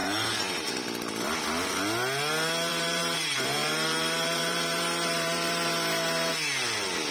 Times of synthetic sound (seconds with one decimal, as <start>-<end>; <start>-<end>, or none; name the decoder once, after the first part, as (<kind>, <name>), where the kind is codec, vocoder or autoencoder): 0.0-0.7 (vocoder, BigVGAN v2); 2.7-6.3